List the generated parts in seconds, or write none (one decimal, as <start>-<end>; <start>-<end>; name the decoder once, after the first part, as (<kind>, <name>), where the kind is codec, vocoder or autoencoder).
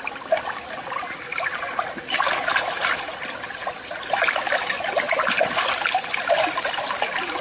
none